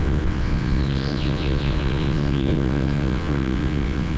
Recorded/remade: remade